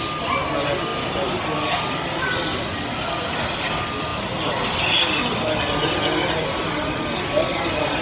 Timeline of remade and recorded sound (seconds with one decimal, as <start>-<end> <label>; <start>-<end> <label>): 0.0-8.0 recorded